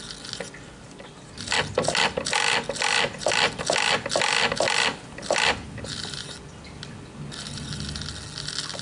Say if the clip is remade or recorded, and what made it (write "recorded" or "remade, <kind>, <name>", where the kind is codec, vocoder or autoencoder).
recorded